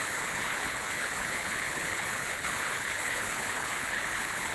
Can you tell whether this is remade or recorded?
remade